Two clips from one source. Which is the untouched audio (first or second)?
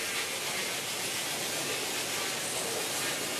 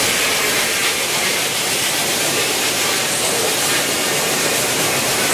first